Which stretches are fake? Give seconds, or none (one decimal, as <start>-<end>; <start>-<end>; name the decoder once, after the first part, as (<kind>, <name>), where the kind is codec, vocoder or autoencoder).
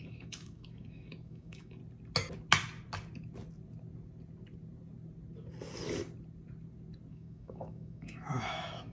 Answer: 0.0-1.8 (autoencoder, DAC-VAE); 7.1-8.9